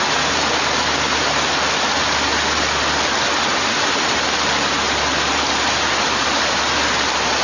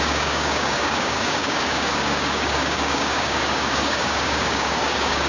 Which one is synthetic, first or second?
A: second